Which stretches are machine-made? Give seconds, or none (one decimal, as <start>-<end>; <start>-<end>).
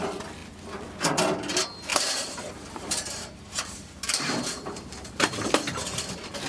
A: 1.9-5.8